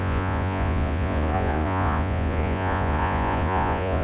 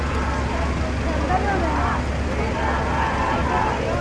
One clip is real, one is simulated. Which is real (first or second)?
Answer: second